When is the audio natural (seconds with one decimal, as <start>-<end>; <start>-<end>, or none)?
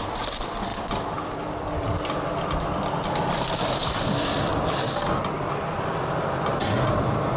0.0-0.7; 2.0-4.5; 6.1-7.4